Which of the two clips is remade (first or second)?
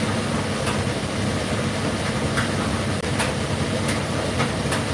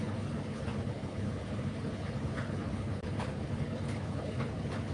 second